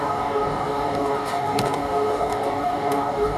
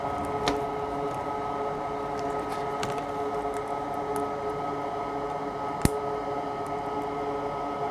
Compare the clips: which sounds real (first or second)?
second